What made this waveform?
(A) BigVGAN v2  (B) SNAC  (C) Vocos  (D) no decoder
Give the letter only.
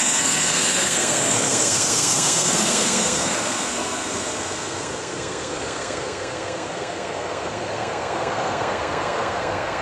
B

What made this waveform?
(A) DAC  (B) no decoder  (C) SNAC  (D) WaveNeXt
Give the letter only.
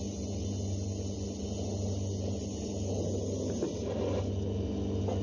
B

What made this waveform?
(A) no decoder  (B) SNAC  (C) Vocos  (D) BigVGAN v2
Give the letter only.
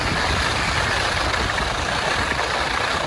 A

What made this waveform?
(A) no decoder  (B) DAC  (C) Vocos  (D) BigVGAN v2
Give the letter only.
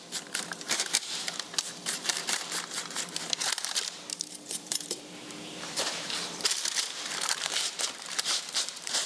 D